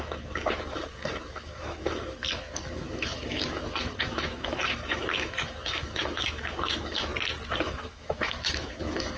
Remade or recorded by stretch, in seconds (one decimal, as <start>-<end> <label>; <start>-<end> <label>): 0.0-7.1 remade; 7.1-7.6 recorded; 7.6-9.2 remade